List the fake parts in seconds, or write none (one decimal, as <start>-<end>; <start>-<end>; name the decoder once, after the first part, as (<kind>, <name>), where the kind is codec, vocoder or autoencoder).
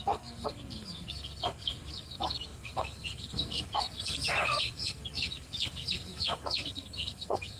0.0-7.6 (codec, SNAC)